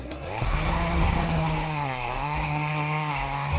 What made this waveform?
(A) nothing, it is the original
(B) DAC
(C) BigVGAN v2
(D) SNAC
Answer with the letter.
D